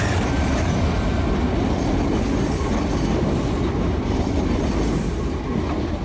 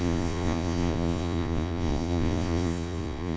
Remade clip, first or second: second